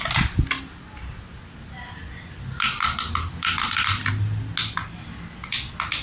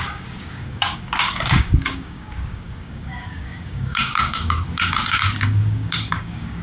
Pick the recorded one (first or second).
first